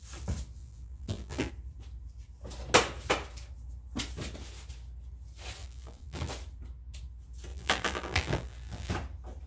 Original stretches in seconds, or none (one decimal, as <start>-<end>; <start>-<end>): 0.0-0.6; 1.5-5.6; 6.3-7.5; 8.9-9.5